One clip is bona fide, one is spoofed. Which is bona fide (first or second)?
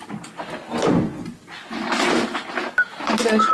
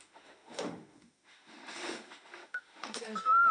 first